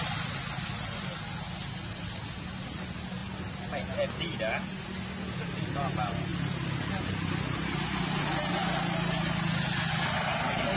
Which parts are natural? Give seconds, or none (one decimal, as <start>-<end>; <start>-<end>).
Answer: 0.0-10.8